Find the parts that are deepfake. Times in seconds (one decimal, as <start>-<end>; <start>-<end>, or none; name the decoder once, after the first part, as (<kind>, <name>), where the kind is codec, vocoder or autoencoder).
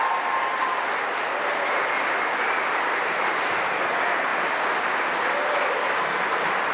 none